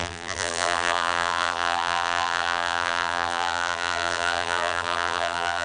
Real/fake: fake